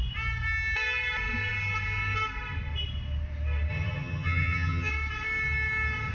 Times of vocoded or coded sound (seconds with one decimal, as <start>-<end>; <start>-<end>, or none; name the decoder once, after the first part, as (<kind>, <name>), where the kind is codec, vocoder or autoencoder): 3.7-4.9 (vocoder, HiFi-GAN)

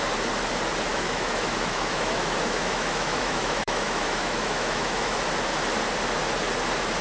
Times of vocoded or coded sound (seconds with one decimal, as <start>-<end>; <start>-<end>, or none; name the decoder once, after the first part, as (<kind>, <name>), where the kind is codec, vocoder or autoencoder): 0.9-5.1 (autoencoder, DAC-VAE)